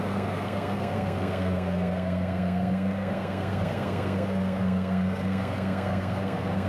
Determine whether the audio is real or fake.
fake